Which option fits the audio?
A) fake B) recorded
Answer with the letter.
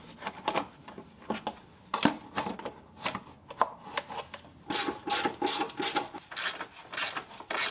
B